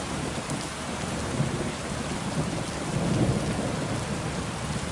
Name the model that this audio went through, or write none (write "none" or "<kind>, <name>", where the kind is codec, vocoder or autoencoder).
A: none